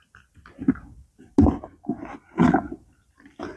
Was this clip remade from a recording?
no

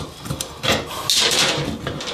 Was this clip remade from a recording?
no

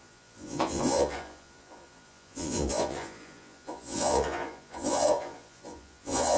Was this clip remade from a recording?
yes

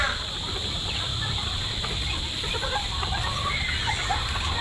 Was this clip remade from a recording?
no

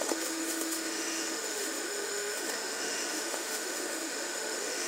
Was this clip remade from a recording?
yes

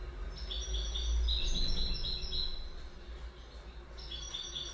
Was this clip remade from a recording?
no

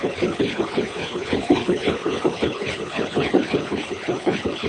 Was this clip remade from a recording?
yes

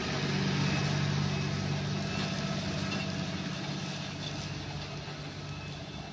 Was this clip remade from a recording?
no